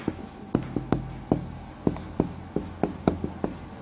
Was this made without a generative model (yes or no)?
yes